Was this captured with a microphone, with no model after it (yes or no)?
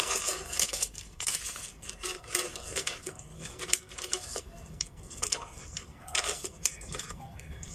no